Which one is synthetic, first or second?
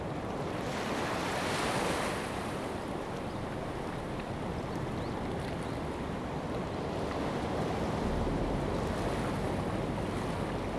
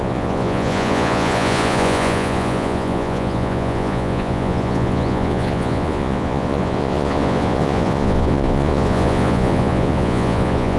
second